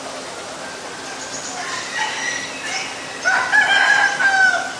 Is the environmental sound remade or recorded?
recorded